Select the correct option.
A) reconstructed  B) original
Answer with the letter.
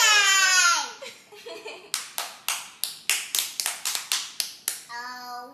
B